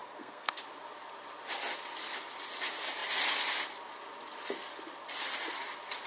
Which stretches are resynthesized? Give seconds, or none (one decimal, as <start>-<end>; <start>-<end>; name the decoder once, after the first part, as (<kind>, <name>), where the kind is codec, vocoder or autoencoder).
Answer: 0.0-0.6 (codec, SNAC)